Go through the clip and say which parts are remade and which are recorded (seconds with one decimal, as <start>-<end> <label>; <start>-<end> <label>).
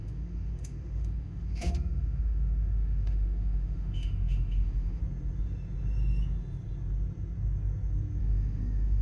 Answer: 0.0-5.0 remade; 5.0-8.2 recorded; 8.2-9.0 remade